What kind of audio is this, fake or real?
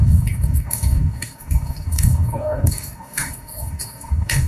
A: fake